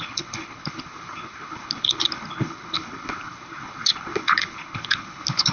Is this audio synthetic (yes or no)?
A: yes